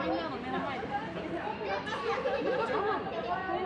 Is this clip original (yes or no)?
yes